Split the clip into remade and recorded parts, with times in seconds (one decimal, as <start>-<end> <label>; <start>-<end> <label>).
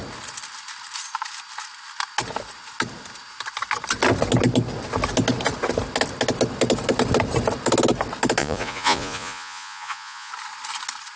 0.0-8.4 recorded; 8.4-10.3 remade; 10.3-11.2 recorded